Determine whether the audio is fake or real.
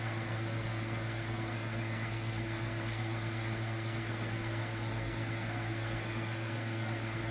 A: fake